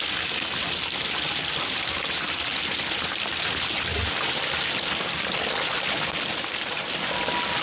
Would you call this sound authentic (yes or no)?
yes